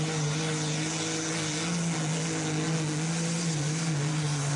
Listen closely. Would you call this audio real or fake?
real